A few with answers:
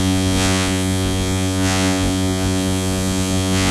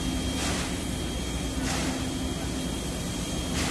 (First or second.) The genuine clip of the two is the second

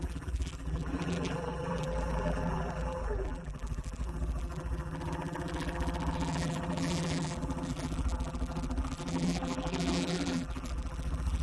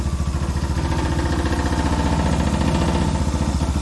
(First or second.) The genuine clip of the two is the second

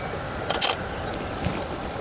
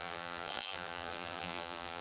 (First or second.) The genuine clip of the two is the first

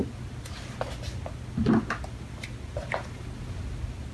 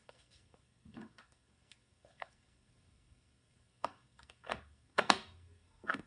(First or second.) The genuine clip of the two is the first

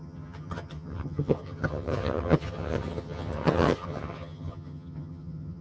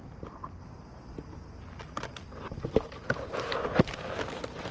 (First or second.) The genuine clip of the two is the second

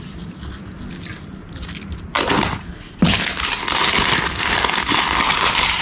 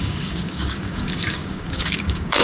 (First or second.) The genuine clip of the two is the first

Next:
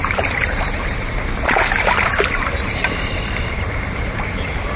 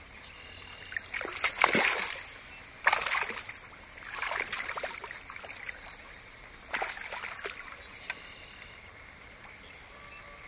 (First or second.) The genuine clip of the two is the second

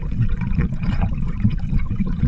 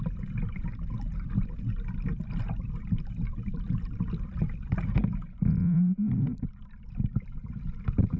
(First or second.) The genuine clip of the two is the second